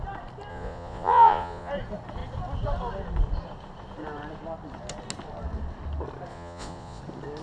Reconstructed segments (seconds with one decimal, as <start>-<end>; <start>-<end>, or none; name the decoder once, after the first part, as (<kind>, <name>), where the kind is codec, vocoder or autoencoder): 0.5-1.7 (vocoder, Vocos); 6.3-7.0

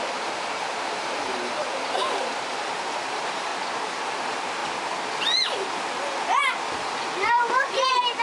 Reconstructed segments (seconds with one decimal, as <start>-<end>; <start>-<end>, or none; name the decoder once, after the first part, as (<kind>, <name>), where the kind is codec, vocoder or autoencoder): 0.0-3.5 (vocoder, BigVGAN v2); 4.1-4.6

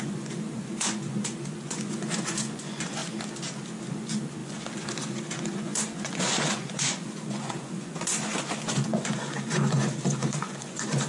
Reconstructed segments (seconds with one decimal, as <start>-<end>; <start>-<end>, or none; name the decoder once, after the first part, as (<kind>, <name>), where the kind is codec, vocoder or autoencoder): 0.0-3.0 (vocoder, Vocos); 3.9-11.1

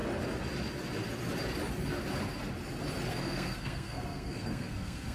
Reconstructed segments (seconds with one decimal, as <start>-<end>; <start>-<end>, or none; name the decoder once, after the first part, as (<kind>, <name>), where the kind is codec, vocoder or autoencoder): 3.1-5.1 (codec, SNAC)

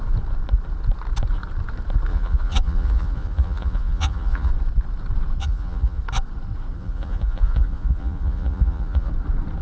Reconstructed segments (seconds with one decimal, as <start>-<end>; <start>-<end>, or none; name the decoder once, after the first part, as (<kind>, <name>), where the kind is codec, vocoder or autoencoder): 2.1-4.5 (vocoder, Vocos); 5.4-6.0; 6.8-9.1

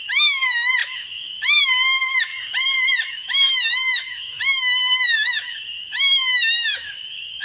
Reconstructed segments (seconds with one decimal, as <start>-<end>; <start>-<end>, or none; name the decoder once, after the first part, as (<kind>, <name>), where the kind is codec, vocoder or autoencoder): 0.0-2.3 (autoencoder, DAC-VAE); 3.1-7.4